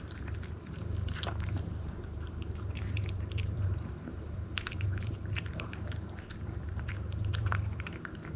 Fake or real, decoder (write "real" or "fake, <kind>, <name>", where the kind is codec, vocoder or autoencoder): fake, vocoder, BigVGAN v2